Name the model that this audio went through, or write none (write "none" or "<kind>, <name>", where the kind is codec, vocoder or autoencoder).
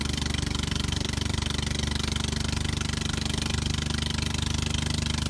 none